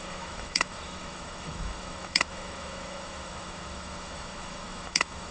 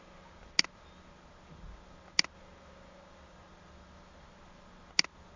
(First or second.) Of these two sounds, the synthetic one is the first